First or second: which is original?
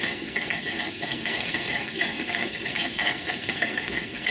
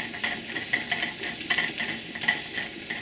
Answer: second